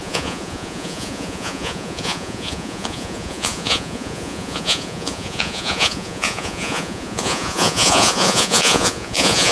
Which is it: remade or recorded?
remade